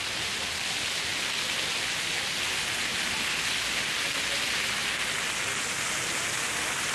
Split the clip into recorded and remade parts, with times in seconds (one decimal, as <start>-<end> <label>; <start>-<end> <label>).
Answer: 0.0-6.9 recorded